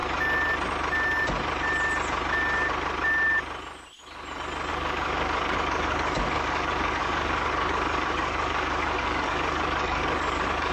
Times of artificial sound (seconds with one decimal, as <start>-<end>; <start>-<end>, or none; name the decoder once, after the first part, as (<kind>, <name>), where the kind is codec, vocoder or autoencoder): 4.7-10.7 (codec, DAC)